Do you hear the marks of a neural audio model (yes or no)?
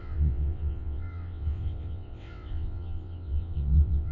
yes